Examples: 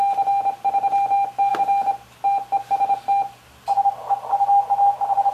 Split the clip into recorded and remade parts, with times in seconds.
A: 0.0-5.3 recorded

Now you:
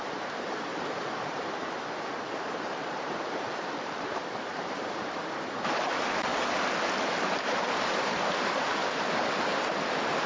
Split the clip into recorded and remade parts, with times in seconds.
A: 0.0-6.3 remade; 6.3-7.2 recorded; 7.2-8.8 remade; 8.8-10.3 recorded